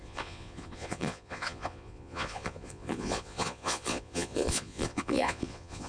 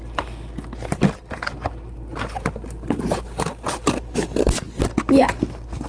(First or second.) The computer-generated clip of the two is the first